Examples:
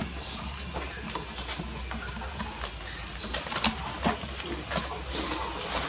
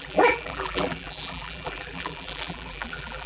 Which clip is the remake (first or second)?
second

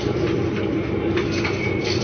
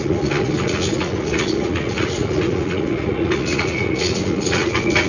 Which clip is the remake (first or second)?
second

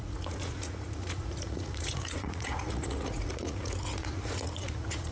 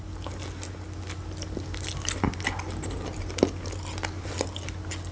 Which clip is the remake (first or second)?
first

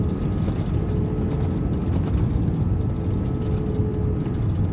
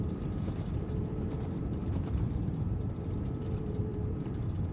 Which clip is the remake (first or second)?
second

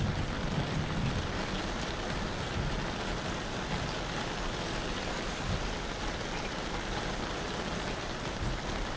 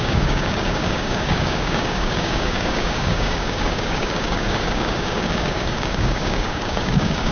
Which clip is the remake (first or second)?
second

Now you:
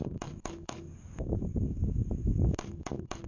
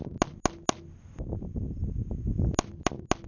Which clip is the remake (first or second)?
first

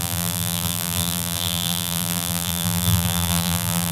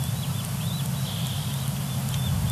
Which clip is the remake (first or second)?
first